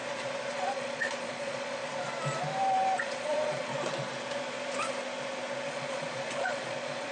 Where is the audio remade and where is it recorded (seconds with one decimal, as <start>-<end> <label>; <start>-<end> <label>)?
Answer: 0.0-0.5 recorded; 0.5-1.8 remade; 1.8-3.0 recorded; 3.0-3.7 remade; 3.7-5.7 recorded; 5.7-7.1 remade